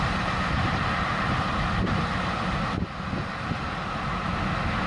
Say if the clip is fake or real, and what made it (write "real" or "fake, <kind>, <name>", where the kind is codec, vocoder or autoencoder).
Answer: real